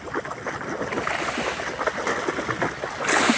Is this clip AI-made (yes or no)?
no